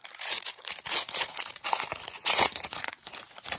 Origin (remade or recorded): remade